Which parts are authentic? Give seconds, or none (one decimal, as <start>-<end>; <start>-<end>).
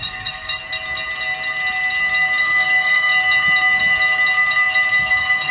0.6-2.4; 3.1-4.9